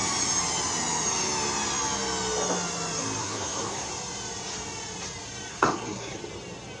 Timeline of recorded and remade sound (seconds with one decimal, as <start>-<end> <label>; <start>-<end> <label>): 0.0-3.2 recorded; 3.2-3.9 remade; 3.9-5.5 recorded; 5.5-6.2 remade; 6.2-6.8 recorded